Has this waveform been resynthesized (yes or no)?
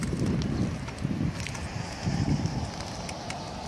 no